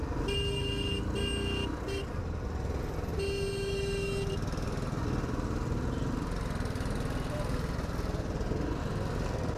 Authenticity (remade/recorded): recorded